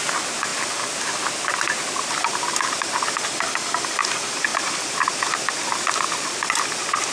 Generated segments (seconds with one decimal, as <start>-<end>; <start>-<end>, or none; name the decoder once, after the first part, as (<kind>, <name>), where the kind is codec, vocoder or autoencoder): none